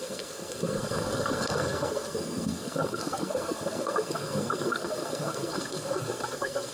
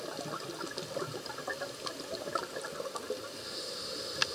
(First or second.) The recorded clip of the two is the second